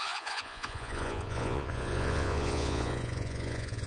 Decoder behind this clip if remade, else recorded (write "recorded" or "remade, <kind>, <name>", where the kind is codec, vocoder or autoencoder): remade, vocoder, Vocos